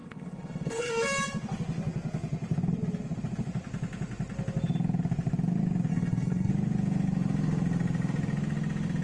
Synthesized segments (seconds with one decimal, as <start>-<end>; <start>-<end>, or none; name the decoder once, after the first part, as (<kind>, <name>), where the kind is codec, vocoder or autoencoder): 0.0-0.9 (codec, HILCodec); 5.9-6.5